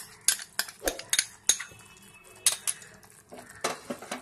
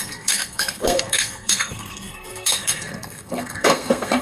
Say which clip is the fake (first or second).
second